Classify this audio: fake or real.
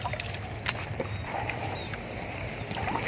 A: real